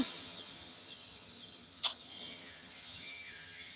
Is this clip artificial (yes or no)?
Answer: yes